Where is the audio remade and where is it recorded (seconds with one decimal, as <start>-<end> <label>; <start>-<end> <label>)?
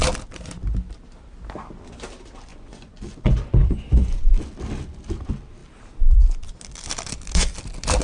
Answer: 0.0-2.5 recorded; 2.5-4.3 remade; 4.3-8.0 recorded